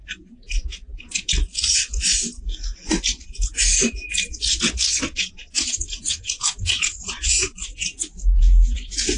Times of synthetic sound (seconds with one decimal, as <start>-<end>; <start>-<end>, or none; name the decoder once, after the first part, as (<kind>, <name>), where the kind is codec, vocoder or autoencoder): none